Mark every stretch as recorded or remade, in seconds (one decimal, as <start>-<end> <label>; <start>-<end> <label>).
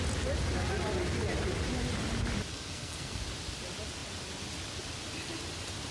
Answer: 0.0-2.5 recorded; 2.5-3.2 remade; 3.2-5.9 recorded